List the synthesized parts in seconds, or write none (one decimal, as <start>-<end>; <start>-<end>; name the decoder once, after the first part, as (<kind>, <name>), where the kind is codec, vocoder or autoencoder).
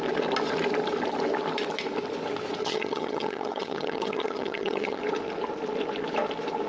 2.6-5.0 (vocoder, HiFi-GAN)